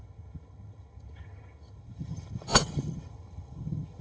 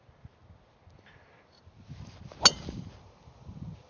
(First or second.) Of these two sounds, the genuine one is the second